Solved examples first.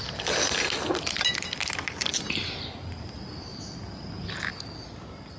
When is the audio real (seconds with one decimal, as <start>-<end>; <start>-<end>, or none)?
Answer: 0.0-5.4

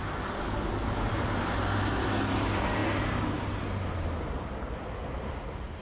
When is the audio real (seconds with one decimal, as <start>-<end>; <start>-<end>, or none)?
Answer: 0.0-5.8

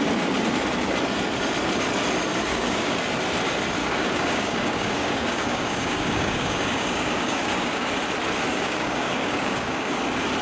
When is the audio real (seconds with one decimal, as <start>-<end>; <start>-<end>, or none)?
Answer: 0.0-2.5; 3.0-3.8; 7.9-8.5; 10.0-10.4

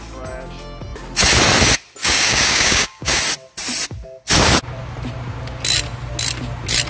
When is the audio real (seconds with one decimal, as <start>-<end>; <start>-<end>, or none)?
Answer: 0.0-2.0; 3.2-6.9

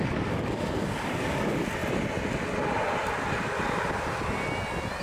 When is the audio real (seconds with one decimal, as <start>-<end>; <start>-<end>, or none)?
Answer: 1.8-5.0

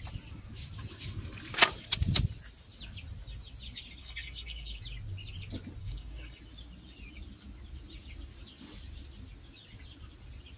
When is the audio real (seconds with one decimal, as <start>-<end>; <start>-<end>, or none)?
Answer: 0.0-4.0; 4.8-5.8; 6.4-10.6

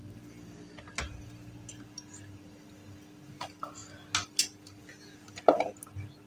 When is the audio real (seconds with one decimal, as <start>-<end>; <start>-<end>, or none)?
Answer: 0.0-6.3

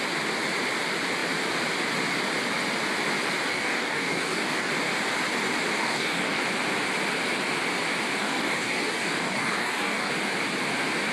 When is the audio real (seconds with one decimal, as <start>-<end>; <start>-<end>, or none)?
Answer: 0.0-3.5; 4.7-5.8; 6.4-8.2; 10.1-11.1